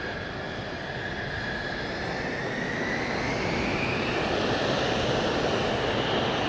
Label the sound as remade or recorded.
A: recorded